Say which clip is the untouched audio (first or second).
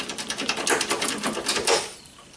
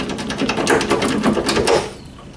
second